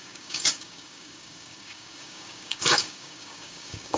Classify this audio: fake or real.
fake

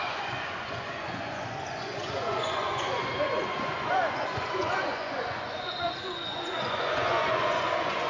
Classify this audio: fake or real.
fake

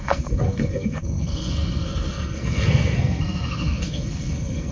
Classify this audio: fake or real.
fake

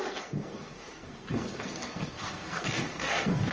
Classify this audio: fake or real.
fake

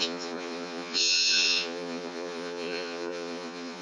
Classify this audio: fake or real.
fake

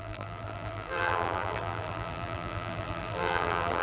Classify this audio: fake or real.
fake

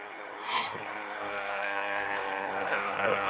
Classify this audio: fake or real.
fake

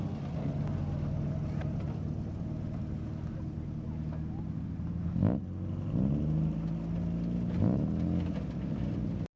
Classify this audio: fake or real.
real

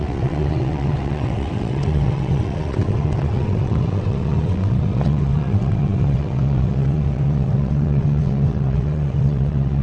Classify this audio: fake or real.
fake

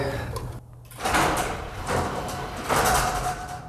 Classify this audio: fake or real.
real